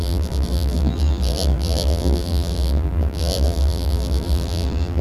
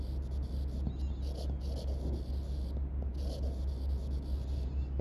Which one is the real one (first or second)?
second